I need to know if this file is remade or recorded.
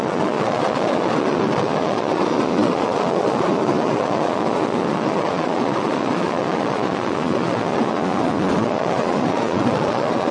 remade